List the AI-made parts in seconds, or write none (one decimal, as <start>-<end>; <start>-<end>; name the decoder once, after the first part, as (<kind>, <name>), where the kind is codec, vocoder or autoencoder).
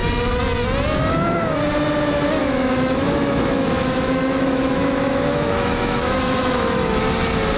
2.4-7.0 (autoencoder, DAC-VAE)